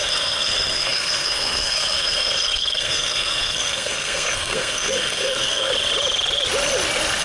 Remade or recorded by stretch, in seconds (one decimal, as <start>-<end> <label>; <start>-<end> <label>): 0.0-5.7 remade; 5.7-7.2 recorded